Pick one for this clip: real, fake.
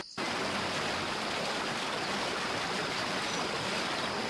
real